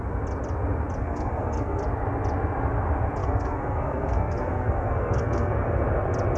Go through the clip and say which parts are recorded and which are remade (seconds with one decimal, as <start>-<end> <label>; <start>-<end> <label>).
0.0-1.0 recorded; 1.0-1.8 remade; 1.8-3.2 recorded; 3.2-5.8 remade; 5.8-6.4 recorded

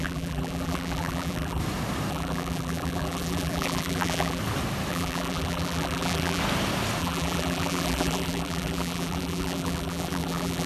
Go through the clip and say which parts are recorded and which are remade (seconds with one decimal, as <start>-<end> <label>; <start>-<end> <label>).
0.0-1.6 remade; 1.6-2.1 recorded; 2.1-4.4 remade; 4.4-4.9 recorded; 4.9-6.4 remade; 6.4-7.0 recorded; 7.0-10.7 remade